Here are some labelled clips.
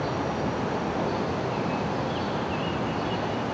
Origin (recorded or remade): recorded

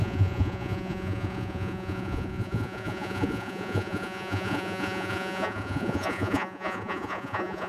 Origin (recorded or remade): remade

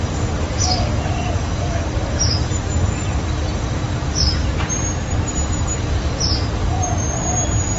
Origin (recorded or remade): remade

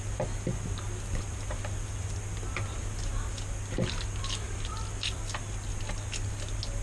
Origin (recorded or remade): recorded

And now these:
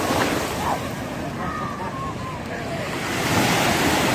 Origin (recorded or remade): recorded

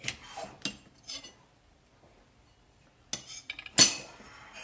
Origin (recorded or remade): recorded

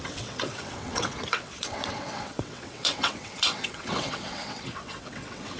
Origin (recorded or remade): remade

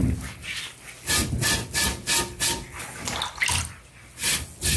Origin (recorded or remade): recorded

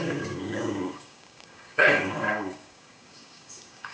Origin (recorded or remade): remade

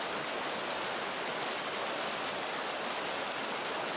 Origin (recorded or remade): recorded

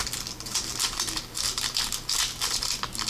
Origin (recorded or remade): recorded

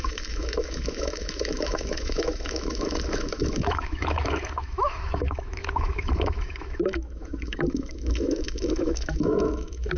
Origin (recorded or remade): remade